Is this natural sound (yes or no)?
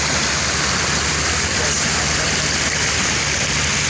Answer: yes